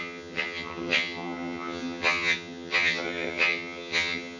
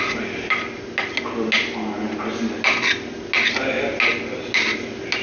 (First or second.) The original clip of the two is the second